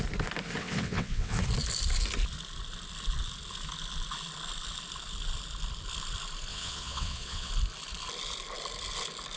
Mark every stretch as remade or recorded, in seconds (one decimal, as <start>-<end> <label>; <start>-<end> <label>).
0.0-0.6 recorded; 0.6-1.4 remade; 1.4-6.5 recorded; 6.5-7.5 remade; 7.5-9.4 recorded